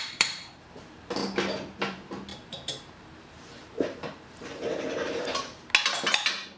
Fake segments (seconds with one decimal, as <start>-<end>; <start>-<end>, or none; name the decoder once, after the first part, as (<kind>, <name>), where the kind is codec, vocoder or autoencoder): 0.0-1.2 (vocoder, BigVGAN v2); 1.8-5.4